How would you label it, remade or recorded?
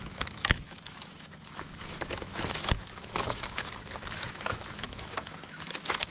remade